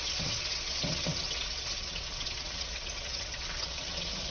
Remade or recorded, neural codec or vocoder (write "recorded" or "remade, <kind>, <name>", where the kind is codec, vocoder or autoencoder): remade, vocoder, WaveNeXt